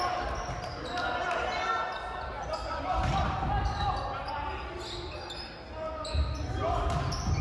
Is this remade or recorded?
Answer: recorded